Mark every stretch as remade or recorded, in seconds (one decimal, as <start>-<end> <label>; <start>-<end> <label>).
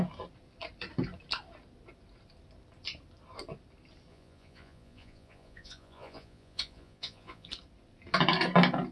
0.0-4.1 recorded; 4.1-7.5 remade; 7.5-8.9 recorded